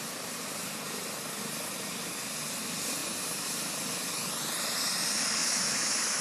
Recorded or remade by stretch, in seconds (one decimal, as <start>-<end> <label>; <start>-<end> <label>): 0.0-5.4 recorded; 5.4-6.2 remade